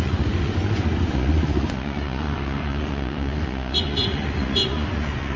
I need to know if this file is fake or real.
fake